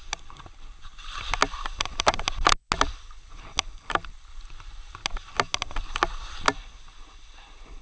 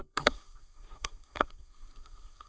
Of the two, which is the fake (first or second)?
second